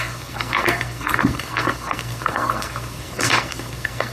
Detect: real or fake fake